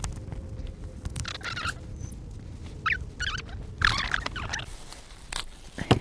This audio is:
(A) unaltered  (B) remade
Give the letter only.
A